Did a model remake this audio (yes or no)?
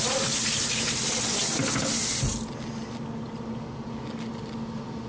no